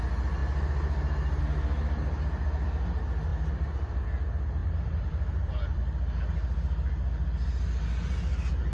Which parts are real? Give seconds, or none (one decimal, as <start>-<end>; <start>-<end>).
0.0-3.3; 4.0-4.6; 5.8-8.7